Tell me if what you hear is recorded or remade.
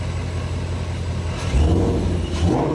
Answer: recorded